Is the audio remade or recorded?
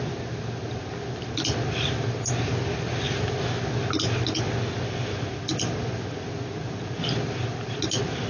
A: recorded